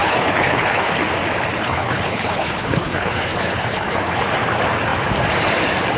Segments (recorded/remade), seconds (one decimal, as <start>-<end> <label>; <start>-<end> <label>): 0.0-0.9 remade; 0.9-1.6 recorded; 1.6-4.2 remade; 4.2-6.0 recorded